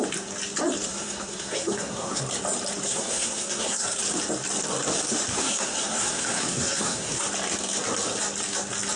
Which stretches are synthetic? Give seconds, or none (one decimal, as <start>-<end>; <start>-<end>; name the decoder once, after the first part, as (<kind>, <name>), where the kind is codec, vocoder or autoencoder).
0.9-2.2 (codec, SNAC); 2.9-4.0; 5.4-7.2